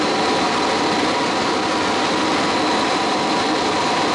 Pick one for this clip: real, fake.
real